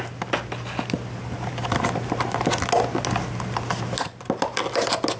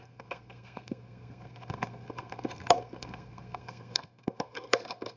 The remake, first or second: second